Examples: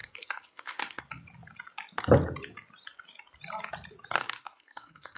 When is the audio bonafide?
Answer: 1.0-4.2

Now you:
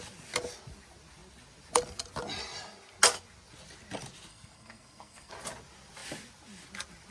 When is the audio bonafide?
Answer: 0.0-4.3; 5.3-7.1